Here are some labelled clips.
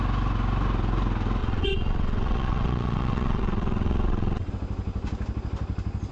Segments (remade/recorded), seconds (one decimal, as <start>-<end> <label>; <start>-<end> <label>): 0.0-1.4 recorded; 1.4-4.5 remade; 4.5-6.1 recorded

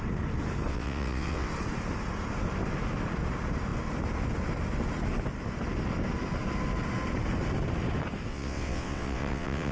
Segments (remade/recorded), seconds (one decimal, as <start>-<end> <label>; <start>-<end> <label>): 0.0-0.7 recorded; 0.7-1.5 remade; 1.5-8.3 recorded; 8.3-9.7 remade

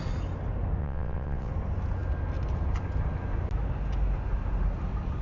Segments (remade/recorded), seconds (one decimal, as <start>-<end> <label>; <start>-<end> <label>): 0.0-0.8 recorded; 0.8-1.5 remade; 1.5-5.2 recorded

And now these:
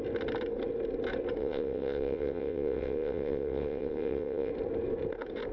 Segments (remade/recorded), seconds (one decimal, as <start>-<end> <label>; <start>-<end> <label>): 0.0-1.4 recorded; 1.4-4.5 remade; 4.5-5.5 recorded

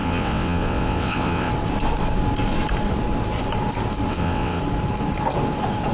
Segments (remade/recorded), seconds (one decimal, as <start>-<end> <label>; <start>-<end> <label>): 0.0-1.5 remade; 1.5-4.1 recorded; 4.1-4.6 remade; 4.6-5.9 recorded